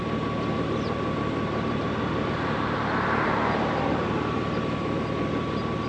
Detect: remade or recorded recorded